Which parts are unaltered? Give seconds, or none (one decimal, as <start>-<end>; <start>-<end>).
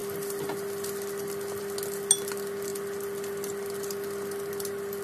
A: 0.0-5.0